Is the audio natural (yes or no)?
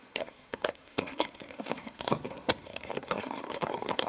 no